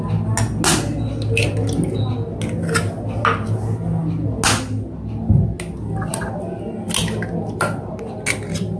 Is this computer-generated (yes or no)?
no